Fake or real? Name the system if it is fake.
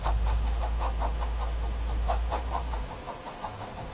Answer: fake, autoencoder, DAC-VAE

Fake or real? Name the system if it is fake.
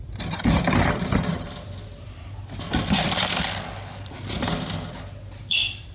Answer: real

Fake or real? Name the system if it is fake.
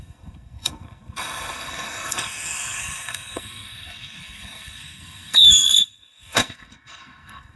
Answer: fake, codec, SNAC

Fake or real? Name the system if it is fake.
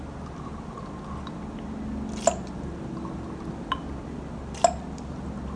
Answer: real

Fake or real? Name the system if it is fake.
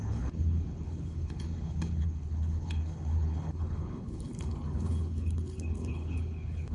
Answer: fake, codec, HILCodec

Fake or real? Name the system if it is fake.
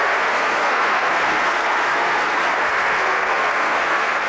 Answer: fake, codec, SNAC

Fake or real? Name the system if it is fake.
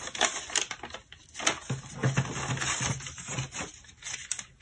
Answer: real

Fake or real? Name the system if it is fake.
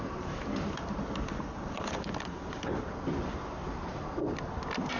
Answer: real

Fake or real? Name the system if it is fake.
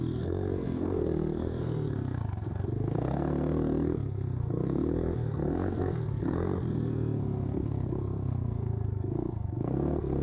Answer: fake, codec, SNAC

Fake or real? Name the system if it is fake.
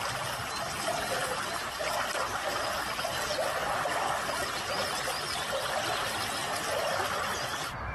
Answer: real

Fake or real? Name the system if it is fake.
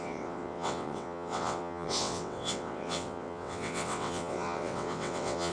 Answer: fake, vocoder, WaveNeXt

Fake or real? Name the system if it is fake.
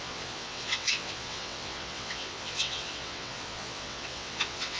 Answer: fake, vocoder, WaveNeXt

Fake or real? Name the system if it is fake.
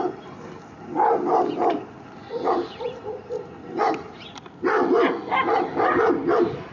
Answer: real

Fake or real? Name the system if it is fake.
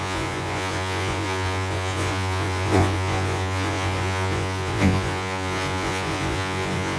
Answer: fake, vocoder, Vocos